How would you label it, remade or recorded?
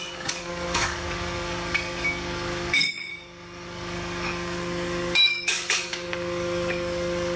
remade